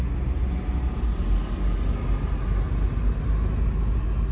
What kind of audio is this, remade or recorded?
recorded